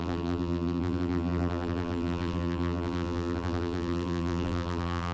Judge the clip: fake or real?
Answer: fake